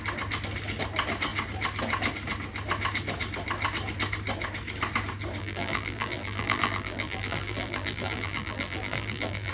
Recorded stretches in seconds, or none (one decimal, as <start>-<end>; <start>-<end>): 0.0-5.4